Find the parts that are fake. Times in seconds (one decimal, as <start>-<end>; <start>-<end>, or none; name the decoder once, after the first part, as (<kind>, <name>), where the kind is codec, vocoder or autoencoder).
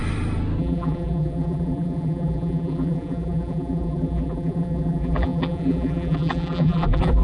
0.6-7.2 (vocoder, BigVGAN v2)